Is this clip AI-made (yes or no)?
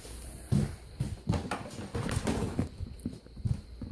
no